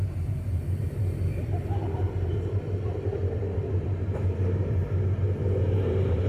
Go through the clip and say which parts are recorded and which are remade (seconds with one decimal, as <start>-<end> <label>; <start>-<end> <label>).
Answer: 0.0-1.0 remade; 1.0-1.7 recorded; 1.7-4.8 remade; 4.8-5.6 recorded; 5.6-6.3 remade